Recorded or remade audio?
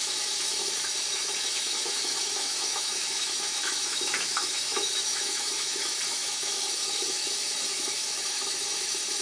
remade